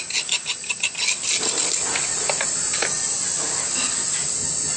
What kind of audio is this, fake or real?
real